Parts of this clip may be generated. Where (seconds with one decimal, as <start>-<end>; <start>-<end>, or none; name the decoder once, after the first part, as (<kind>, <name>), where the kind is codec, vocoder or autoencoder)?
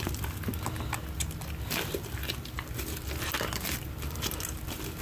none